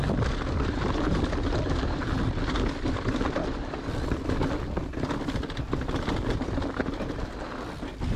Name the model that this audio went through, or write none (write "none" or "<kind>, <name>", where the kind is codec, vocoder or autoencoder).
none